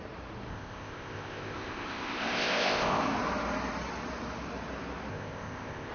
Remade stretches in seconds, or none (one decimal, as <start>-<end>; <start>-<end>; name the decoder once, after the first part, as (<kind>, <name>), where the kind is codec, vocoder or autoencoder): 0.5-3.0 (codec, ZipCodec); 5.1-5.9